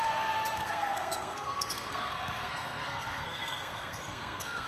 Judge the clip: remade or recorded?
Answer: remade